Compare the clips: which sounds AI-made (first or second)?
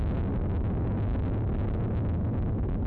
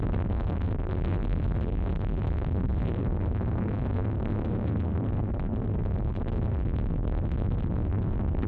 second